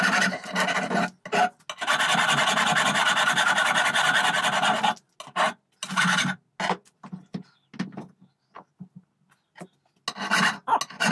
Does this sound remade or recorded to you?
recorded